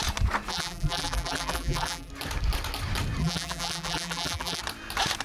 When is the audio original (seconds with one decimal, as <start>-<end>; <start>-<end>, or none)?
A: 0.0-0.5; 2.1-3.2; 4.6-5.2